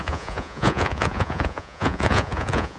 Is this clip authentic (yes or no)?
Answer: no